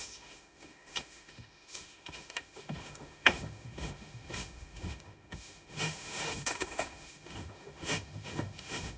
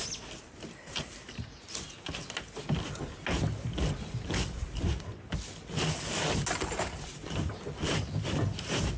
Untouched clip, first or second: second